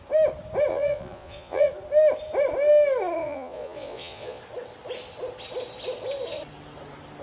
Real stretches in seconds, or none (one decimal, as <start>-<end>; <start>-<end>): 0.0-0.7; 1.7-3.2; 4.4-7.2